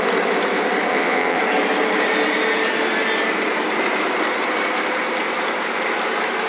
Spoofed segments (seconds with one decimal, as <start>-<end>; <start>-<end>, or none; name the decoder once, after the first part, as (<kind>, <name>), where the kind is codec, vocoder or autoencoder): 0.9-1.4 (vocoder, WaveNeXt)